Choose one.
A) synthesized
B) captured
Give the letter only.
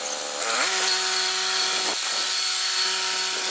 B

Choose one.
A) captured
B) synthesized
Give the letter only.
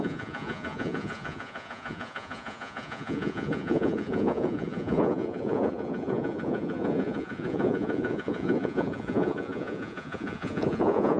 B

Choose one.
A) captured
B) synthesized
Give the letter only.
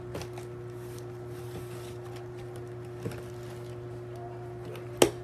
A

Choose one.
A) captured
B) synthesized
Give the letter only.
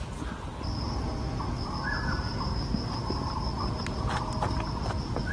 A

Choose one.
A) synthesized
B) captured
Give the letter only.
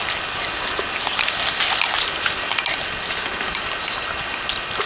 B